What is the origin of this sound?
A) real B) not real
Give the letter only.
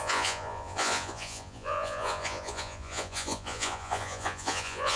B